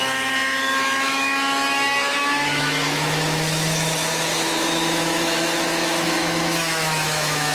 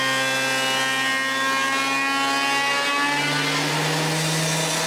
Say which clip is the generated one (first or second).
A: first